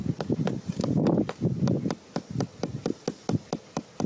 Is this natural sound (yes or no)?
yes